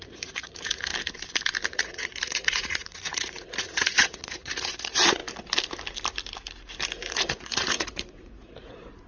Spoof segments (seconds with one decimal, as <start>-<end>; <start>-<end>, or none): 0.0-0.9; 1.7-5.2; 7.1-9.1